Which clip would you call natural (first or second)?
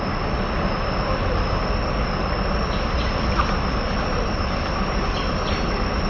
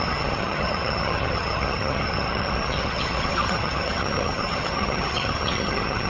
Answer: first